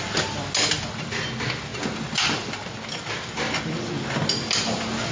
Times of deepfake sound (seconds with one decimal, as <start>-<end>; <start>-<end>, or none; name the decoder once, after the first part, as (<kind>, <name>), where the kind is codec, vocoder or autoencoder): none